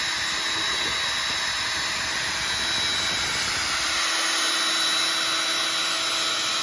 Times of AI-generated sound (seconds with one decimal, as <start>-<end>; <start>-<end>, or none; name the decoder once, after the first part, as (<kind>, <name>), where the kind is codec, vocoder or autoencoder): none